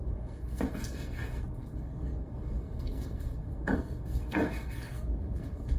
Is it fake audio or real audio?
fake